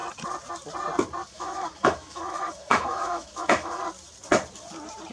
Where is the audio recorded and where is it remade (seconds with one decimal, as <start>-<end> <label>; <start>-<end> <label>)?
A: 0.0-1.3 recorded; 1.3-3.8 remade; 3.8-5.1 recorded